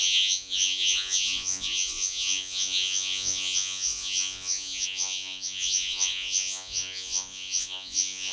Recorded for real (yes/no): no